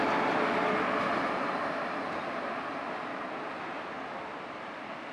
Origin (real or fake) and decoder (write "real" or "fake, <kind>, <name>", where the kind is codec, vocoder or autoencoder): real